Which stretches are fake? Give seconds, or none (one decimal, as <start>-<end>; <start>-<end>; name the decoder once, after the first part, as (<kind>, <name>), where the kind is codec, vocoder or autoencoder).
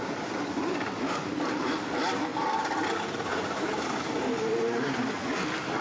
2.3-3.7 (vocoder, BigVGAN v2)